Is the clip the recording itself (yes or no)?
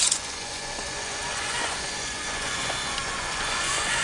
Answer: no